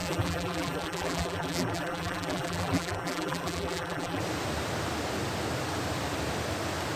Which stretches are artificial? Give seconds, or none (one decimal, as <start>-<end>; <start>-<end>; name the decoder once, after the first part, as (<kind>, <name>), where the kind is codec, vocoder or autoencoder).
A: 0.0-4.2 (vocoder, BigVGAN v2)